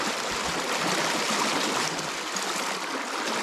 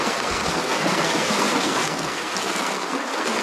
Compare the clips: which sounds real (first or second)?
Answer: first